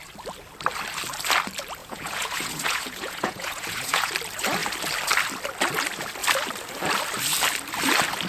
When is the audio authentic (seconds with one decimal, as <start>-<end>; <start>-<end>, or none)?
0.0-1.8; 4.1-8.3